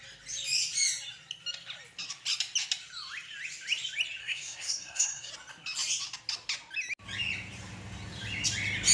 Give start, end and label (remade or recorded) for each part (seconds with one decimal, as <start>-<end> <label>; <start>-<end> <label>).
0.0-4.2 recorded; 4.2-5.3 remade; 5.3-8.9 recorded